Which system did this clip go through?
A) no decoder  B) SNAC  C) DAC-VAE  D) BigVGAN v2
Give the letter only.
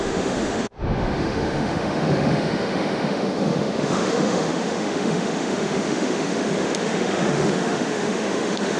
C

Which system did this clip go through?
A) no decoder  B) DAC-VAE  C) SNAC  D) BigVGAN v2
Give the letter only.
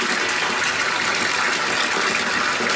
A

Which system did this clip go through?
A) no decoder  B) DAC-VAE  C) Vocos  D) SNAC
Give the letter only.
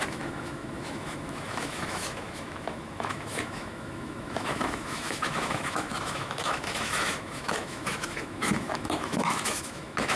B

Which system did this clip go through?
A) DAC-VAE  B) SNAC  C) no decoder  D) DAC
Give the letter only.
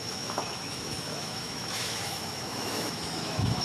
A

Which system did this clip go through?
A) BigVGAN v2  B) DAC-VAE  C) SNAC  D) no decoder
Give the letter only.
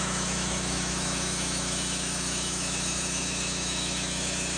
B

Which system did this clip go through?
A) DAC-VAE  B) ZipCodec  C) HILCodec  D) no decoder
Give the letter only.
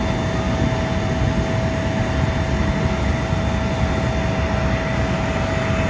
D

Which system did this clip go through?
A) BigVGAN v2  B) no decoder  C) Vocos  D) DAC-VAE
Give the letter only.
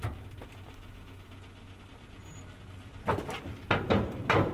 B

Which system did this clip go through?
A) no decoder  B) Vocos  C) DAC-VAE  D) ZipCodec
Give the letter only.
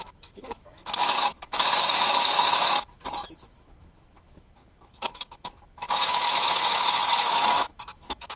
C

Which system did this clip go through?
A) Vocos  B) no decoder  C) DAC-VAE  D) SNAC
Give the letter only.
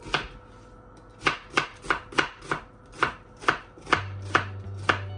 B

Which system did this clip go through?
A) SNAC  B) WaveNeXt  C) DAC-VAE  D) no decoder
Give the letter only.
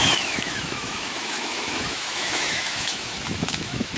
C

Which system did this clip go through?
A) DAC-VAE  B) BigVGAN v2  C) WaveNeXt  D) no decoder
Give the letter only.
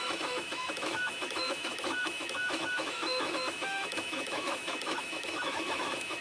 A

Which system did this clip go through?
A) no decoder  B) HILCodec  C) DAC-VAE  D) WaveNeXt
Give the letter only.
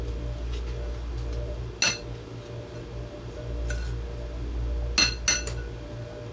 A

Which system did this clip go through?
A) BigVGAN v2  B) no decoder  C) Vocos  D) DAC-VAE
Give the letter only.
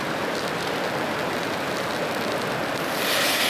B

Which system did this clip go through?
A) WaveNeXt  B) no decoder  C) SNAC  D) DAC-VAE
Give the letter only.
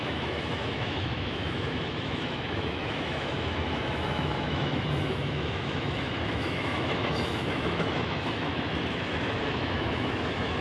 D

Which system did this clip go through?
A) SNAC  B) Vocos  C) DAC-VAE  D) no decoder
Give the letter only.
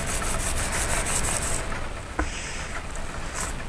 D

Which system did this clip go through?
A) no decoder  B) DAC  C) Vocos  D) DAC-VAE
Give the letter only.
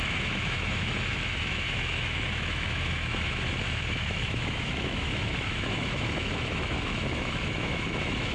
D